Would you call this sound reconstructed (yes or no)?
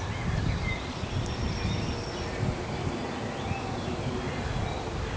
yes